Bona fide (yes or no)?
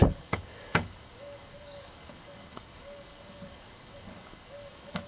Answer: no